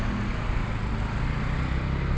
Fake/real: real